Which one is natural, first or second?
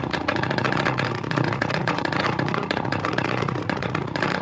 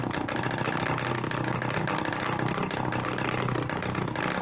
second